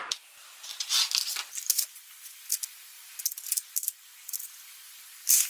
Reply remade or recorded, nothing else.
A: recorded